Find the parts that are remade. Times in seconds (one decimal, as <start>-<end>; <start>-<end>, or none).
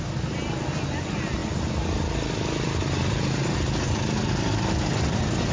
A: none